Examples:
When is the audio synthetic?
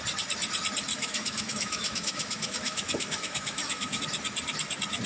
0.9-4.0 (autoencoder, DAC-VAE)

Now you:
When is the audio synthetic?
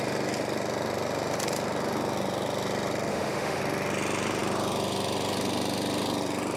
3.1-3.6 (autoencoder, DAC-VAE)